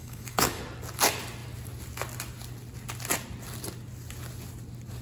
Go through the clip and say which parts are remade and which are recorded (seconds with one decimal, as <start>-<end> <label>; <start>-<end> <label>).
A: 0.0-0.6 remade; 0.6-5.0 recorded